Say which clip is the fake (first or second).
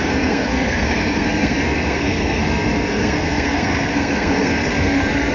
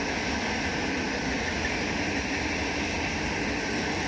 first